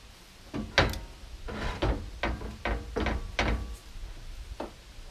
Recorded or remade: recorded